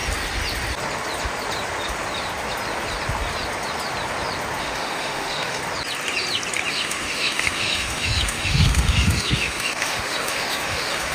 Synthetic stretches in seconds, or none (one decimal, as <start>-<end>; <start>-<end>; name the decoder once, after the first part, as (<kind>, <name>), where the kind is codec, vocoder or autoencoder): 4.6-5.6 (autoencoder, DAC-VAE); 6.7-11.1